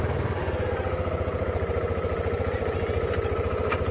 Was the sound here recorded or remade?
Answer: recorded